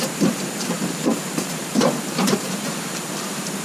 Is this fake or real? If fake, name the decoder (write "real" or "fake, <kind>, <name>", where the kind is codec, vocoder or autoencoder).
fake, vocoder, BigVGAN v2